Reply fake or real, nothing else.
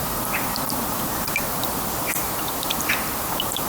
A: real